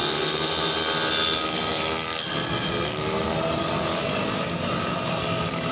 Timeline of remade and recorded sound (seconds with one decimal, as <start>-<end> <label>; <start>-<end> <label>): 0.0-5.7 recorded

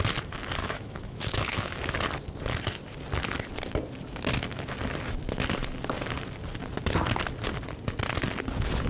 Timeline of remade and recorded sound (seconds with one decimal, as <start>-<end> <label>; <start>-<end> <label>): 0.0-0.6 recorded; 0.6-1.8 remade; 1.8-8.9 recorded